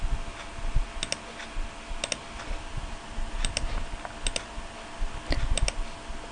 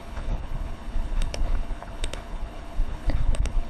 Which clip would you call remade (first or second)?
second